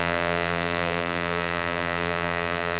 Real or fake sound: fake